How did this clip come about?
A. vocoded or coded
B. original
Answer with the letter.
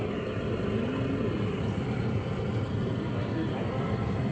B